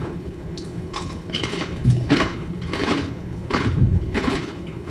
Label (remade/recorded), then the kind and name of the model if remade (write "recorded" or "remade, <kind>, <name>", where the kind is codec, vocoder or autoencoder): remade, codec, HILCodec